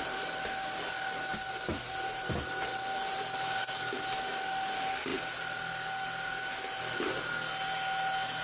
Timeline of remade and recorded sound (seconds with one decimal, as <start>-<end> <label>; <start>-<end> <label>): 0.0-8.4 recorded